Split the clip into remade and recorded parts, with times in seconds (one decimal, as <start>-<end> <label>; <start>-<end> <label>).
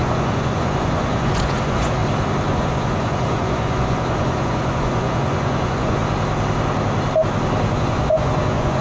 0.0-2.0 remade; 2.0-2.5 recorded; 2.5-6.0 remade; 6.0-7.7 recorded; 7.7-8.8 remade